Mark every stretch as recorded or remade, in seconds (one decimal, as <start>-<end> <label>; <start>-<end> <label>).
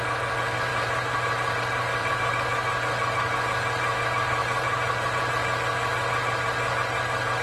0.0-0.7 recorded; 0.7-2.3 remade; 2.3-4.4 recorded; 4.4-5.3 remade; 5.3-7.4 recorded